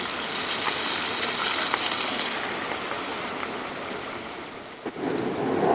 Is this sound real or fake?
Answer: real